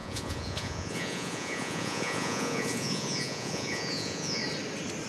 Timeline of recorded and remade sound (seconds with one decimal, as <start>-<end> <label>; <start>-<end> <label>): 0.0-4.4 remade; 4.4-5.1 recorded